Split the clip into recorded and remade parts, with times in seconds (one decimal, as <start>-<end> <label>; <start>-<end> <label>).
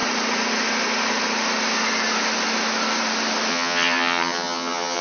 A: 0.0-3.5 recorded; 3.5-5.0 remade